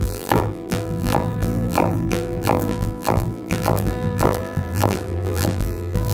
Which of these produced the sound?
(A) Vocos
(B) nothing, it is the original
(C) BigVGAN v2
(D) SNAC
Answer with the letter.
C